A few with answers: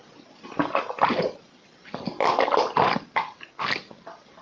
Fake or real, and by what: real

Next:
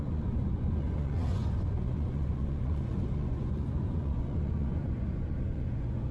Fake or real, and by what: fake, vocoder, Vocos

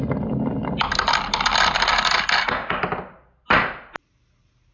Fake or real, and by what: real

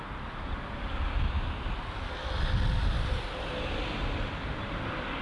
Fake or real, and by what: real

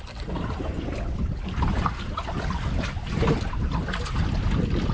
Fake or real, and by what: real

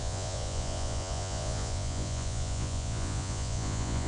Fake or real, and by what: fake, vocoder, Vocos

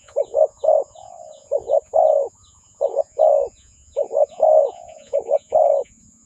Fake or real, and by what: fake, vocoder, Vocos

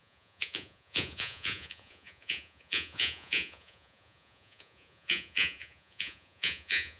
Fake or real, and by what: fake, vocoder, Vocos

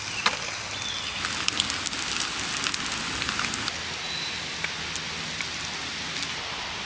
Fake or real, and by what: real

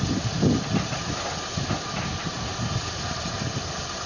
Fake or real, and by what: real